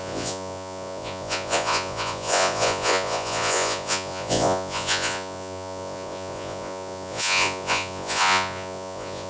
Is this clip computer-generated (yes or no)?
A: yes